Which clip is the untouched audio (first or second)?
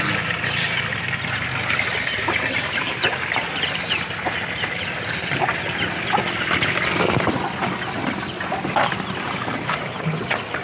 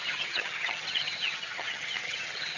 first